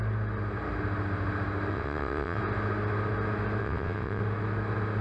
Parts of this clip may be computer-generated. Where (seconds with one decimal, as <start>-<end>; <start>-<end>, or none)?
1.7-2.4; 3.6-4.2